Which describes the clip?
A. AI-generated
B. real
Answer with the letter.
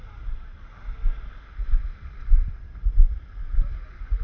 B